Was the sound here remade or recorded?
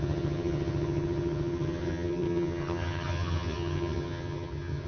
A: remade